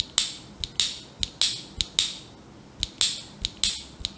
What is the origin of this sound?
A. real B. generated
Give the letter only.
A